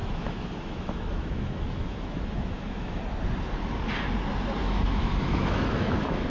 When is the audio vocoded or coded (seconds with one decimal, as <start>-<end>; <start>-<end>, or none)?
0.0-3.0; 4.6-6.3